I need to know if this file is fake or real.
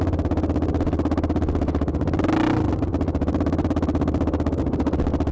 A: real